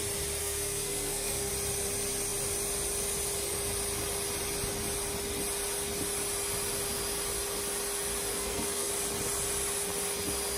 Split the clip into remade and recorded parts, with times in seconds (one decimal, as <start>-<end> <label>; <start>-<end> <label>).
0.0-0.4 recorded; 0.4-1.5 remade; 1.5-8.3 recorded; 8.3-8.9 remade; 8.9-10.6 recorded